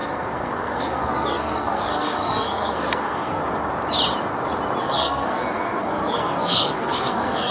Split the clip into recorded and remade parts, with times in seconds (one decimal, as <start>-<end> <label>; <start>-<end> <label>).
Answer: 0.0-3.4 remade; 3.4-4.8 recorded; 4.8-7.5 remade

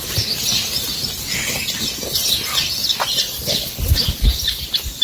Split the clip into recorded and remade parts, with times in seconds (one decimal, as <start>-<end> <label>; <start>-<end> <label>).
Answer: 0.0-5.0 recorded

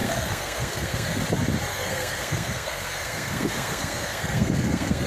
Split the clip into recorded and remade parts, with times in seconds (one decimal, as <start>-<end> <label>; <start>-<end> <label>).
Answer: 0.0-1.2 remade; 1.2-1.7 recorded; 1.7-5.1 remade

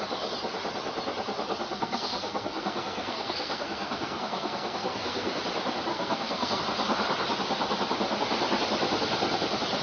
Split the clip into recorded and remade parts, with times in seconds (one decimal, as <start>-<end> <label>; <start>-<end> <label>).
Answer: 0.0-1.7 recorded; 1.7-5.4 remade; 5.4-5.9 recorded; 5.9-6.6 remade; 6.6-9.8 recorded

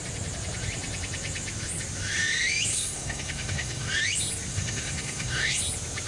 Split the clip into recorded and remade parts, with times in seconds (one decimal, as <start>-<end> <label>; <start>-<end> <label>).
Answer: 0.0-2.7 recorded; 2.7-3.9 remade; 3.9-4.5 recorded; 4.5-5.6 remade; 5.6-6.1 recorded

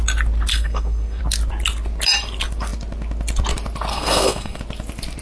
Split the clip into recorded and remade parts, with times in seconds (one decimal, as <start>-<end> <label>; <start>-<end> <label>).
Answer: 0.0-0.5 recorded; 0.5-1.2 remade; 1.2-3.9 recorded; 3.9-4.6 remade; 4.6-5.2 recorded

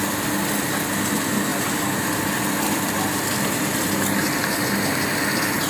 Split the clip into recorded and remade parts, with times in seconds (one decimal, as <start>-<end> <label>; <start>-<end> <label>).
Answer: 0.0-5.7 recorded